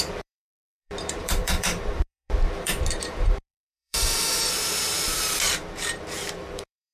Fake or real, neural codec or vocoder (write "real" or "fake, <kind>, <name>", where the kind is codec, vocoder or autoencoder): fake, vocoder, BigVGAN v2